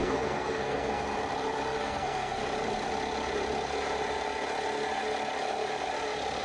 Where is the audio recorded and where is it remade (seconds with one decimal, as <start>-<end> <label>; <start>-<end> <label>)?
0.0-1.1 remade; 1.1-1.8 recorded; 1.8-2.4 remade; 2.4-6.4 recorded